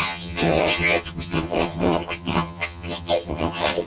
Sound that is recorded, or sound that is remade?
remade